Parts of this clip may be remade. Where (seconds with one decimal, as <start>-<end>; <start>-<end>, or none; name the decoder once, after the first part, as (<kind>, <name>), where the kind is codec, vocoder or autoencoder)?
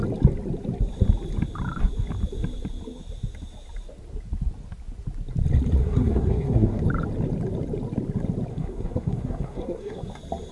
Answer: 5.8-6.8 (codec, SNAC); 8.5-10.1